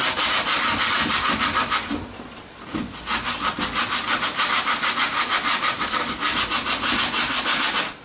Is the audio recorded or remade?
recorded